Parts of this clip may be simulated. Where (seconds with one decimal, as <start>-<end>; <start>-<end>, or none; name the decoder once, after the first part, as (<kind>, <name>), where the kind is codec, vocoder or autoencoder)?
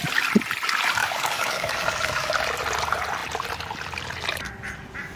1.0-2.3 (codec, DAC)